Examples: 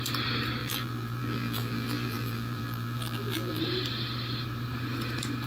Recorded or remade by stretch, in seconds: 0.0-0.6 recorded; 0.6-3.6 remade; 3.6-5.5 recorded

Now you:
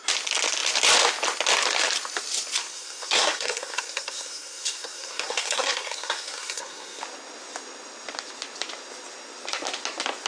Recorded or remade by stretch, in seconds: 0.0-2.6 recorded; 2.6-7.0 remade; 7.0-10.3 recorded

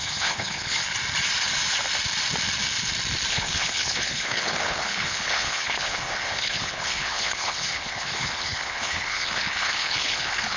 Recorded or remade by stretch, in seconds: 0.0-0.8 remade; 0.8-3.3 recorded; 3.3-10.6 remade

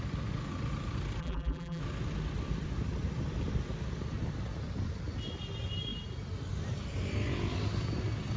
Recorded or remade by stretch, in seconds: 0.0-1.2 recorded; 1.2-1.8 remade; 1.8-8.4 recorded

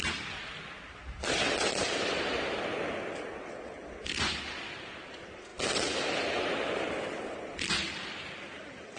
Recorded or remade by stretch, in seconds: 0.0-9.0 recorded

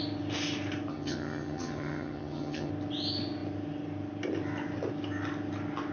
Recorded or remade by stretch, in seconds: 0.0-0.9 recorded; 0.9-2.7 remade; 2.7-5.9 recorded